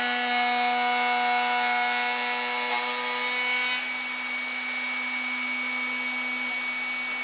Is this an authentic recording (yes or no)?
yes